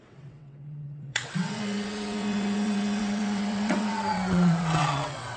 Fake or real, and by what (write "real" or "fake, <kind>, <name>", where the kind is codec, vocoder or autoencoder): fake, vocoder, WaveNeXt